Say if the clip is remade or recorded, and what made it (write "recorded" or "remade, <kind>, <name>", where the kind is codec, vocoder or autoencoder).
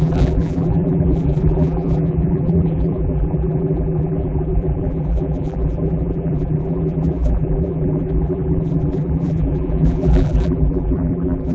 remade, vocoder, BigVGAN v2